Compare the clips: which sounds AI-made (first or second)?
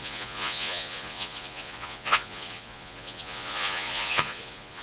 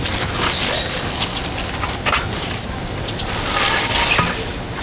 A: first